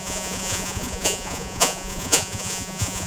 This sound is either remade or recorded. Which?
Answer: remade